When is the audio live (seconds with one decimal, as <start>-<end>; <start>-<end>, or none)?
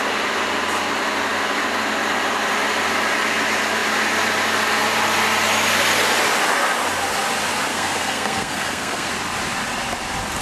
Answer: 0.0-7.7; 9.1-10.4